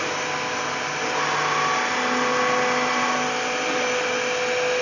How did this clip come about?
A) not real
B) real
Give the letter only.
B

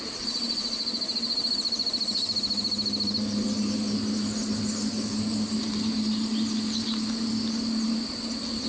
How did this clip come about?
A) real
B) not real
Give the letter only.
A